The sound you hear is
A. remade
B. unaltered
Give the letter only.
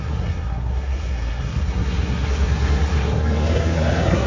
A